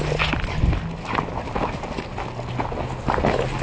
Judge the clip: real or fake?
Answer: real